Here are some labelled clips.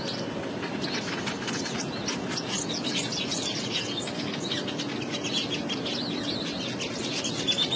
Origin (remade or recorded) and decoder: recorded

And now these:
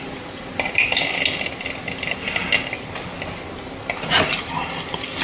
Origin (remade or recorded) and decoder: recorded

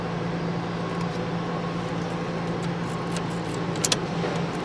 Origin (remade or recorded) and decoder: recorded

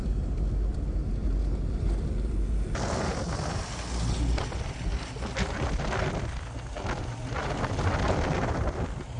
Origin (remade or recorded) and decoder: recorded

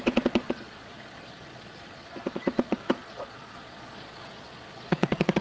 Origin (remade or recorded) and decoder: remade, vocoder, Vocos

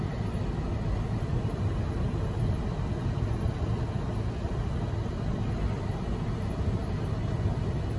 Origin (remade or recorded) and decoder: recorded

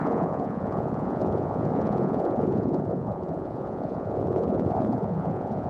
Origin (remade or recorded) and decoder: remade, vocoder, Vocos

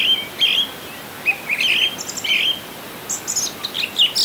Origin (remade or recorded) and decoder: recorded